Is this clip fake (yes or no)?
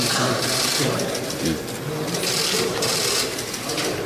no